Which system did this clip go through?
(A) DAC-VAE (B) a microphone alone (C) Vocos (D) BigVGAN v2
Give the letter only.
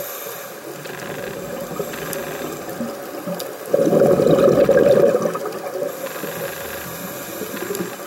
B